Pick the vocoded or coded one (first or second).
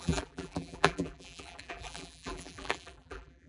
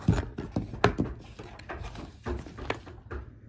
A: first